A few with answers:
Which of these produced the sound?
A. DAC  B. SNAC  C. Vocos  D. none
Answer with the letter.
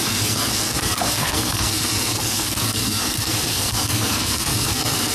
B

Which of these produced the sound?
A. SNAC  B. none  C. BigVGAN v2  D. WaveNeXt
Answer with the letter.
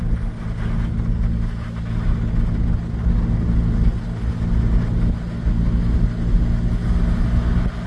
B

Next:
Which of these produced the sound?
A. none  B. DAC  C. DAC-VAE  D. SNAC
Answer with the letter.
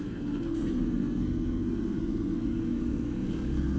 D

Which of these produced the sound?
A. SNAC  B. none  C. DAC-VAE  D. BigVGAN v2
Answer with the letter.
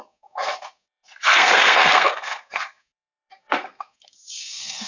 A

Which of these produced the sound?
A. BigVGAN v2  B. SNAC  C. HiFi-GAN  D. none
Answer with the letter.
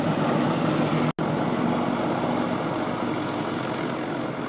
D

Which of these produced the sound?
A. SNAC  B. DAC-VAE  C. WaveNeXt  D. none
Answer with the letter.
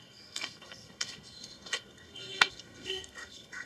A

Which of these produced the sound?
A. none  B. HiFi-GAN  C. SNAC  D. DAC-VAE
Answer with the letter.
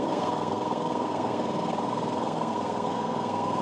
C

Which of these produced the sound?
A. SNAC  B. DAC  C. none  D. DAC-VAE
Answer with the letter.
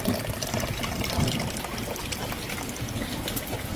C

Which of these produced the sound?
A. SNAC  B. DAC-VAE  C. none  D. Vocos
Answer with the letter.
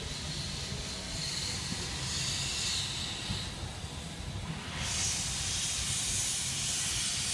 C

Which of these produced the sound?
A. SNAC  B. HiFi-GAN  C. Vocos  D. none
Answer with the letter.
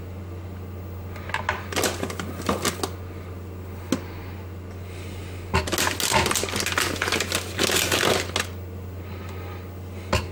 D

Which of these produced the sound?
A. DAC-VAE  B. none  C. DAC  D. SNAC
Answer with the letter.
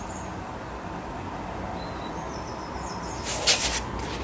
B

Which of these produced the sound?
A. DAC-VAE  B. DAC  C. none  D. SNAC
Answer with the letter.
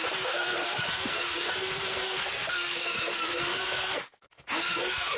D